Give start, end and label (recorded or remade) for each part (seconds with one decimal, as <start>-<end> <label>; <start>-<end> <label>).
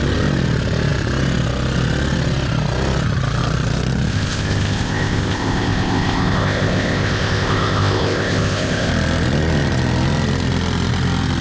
0.0-4.1 recorded; 4.1-8.9 remade; 8.9-11.4 recorded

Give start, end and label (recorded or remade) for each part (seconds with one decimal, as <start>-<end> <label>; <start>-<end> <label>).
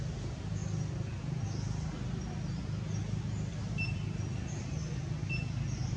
0.0-6.0 recorded